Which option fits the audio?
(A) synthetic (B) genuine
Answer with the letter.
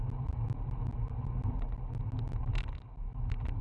B